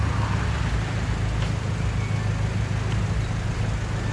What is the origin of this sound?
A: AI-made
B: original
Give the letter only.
B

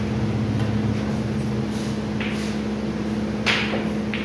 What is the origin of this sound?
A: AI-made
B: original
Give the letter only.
B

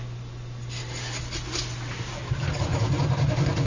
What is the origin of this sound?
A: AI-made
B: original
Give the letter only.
B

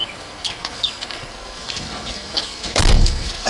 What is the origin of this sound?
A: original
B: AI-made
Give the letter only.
B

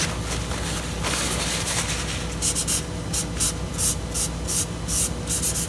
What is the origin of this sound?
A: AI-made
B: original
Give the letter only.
B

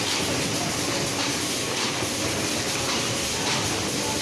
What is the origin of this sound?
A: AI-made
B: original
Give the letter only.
B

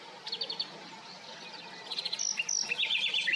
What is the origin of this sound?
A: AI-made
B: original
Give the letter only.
B